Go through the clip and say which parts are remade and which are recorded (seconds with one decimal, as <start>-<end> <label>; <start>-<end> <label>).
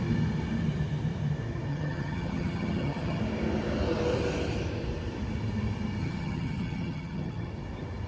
0.0-1.7 recorded; 1.7-3.2 remade; 3.2-6.0 recorded; 6.0-7.5 remade; 7.5-8.1 recorded